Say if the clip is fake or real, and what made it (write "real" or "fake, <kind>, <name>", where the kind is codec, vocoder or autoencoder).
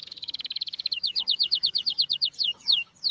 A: fake, codec, DAC